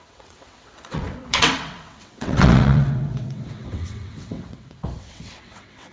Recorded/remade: remade